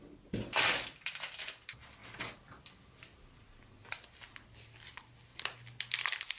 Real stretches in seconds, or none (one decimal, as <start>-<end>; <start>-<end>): 0.0-6.4